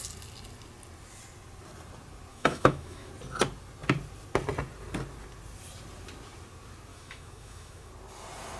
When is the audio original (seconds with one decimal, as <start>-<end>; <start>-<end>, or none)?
0.0-2.3; 3.1-6.9; 7.9-8.6